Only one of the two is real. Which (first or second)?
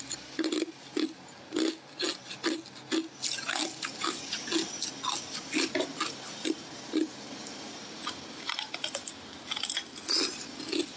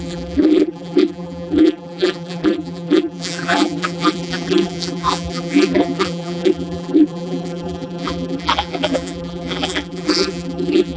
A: first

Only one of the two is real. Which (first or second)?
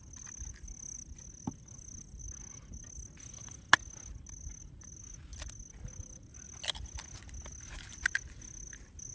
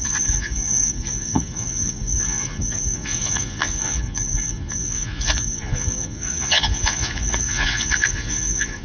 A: first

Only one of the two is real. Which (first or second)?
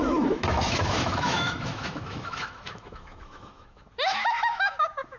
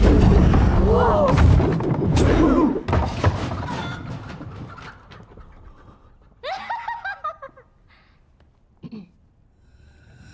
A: second